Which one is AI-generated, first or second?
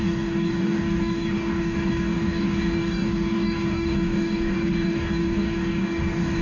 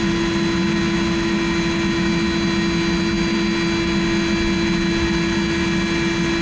first